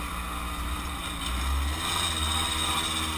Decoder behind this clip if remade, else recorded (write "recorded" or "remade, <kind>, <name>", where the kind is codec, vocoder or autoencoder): recorded